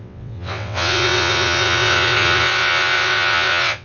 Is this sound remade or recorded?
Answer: remade